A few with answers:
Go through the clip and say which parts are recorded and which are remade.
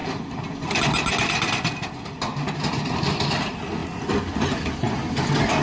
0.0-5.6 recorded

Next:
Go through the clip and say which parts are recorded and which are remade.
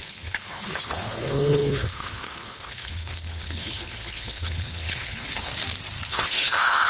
0.0-5.5 remade; 5.5-6.1 recorded; 6.1-6.9 remade